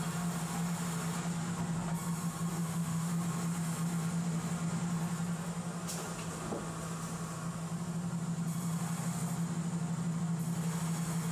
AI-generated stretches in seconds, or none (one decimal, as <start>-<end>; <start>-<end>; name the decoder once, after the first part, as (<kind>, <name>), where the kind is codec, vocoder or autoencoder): 2.6-3.1 (autoencoder, DAC-VAE)